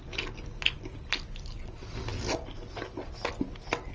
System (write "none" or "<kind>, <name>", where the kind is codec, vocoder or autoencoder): none